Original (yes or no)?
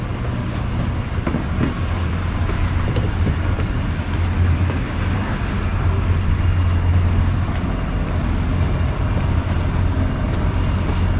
yes